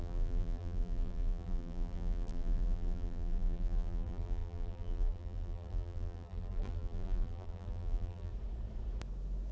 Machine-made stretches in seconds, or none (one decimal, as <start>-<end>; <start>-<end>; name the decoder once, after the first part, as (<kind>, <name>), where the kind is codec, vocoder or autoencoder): 0.0-8.3 (vocoder, BigVGAN v2)